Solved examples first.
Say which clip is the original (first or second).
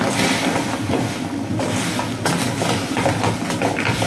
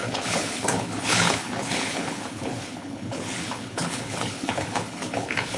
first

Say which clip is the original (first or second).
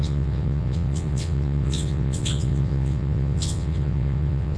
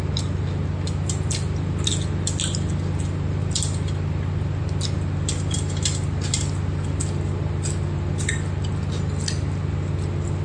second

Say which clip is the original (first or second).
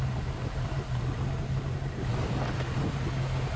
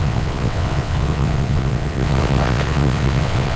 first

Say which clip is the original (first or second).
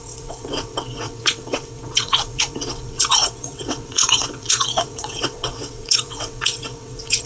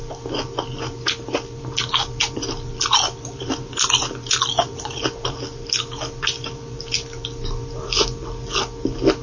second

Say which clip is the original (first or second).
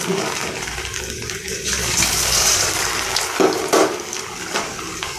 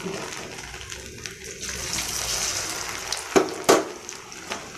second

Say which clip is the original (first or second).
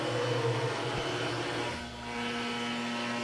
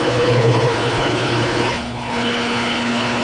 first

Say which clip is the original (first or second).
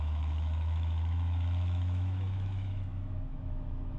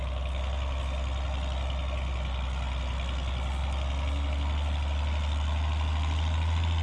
second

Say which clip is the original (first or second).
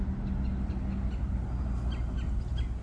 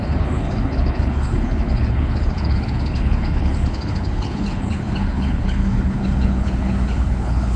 first